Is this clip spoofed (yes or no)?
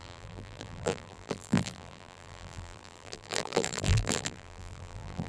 yes